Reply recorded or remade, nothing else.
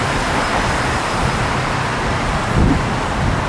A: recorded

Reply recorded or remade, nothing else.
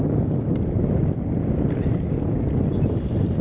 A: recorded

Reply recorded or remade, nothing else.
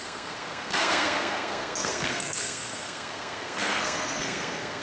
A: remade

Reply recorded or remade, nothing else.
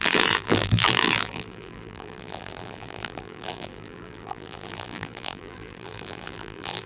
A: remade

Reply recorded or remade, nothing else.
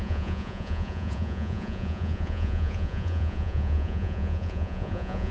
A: remade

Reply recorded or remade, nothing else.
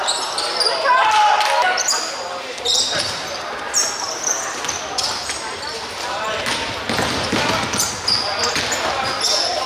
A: recorded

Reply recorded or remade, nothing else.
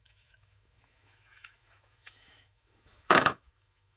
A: remade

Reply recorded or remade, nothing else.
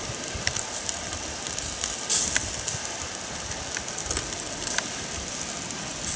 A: recorded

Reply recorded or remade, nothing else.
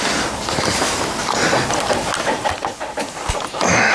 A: recorded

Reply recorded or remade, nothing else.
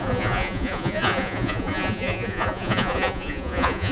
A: remade